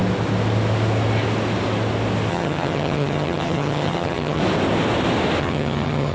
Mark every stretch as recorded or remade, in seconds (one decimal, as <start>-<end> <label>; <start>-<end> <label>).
0.0-2.3 recorded; 2.3-4.4 remade; 4.4-5.4 recorded; 5.4-6.1 remade